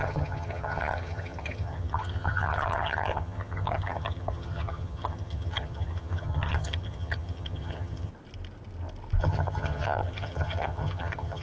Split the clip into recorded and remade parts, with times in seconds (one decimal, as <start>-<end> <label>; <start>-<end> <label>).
0.0-8.1 remade; 8.1-9.2 recorded; 9.2-11.4 remade